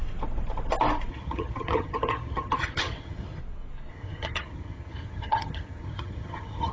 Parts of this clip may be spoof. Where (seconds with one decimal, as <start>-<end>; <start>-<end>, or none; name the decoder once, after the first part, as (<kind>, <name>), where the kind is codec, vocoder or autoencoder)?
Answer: 1.1-3.4 (vocoder, HiFi-GAN); 3.9-6.7